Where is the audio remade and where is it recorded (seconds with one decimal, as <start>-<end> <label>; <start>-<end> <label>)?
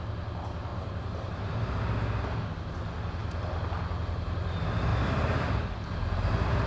0.0-0.7 recorded; 0.7-2.2 remade; 2.2-6.7 recorded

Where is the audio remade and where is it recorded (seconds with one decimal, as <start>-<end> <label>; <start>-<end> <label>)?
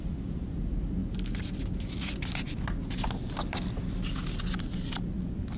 0.0-1.0 remade; 1.0-4.4 recorded; 4.4-5.6 remade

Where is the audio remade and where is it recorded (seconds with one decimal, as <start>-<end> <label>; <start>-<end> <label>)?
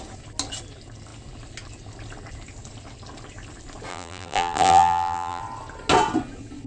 0.0-3.9 recorded; 3.9-5.4 remade; 5.4-6.7 recorded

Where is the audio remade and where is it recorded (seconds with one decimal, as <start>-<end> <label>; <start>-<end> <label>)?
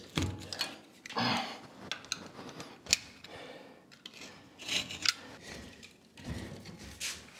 0.0-7.4 recorded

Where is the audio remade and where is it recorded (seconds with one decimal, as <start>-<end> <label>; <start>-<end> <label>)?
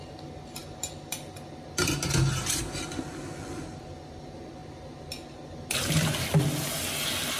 0.0-7.4 recorded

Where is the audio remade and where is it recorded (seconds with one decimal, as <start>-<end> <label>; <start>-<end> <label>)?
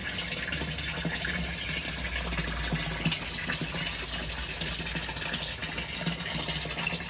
0.0-7.1 recorded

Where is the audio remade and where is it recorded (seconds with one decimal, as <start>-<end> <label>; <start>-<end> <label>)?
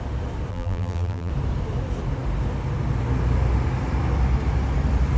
0.0-0.5 recorded; 0.5-1.3 remade; 1.3-5.2 recorded